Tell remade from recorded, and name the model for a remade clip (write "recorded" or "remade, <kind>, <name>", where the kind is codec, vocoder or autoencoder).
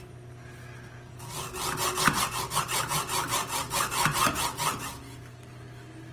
recorded